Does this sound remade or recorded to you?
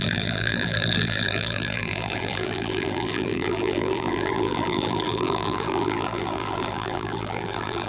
remade